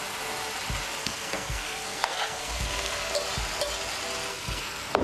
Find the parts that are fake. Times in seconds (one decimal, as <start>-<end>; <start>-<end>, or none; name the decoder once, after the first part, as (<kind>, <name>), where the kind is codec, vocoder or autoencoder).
1.0-3.1 (codec, SNAC); 4.3-5.0